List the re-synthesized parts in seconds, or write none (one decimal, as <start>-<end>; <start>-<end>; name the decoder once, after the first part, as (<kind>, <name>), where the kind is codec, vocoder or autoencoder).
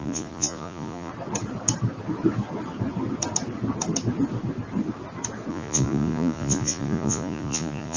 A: 0.0-1.1 (vocoder, Vocos); 5.5-8.0